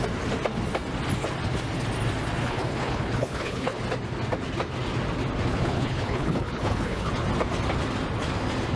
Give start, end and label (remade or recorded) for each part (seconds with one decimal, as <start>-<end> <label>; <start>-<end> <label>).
0.0-2.4 recorded; 2.4-3.8 remade; 3.8-5.5 recorded; 5.5-7.1 remade; 7.1-8.8 recorded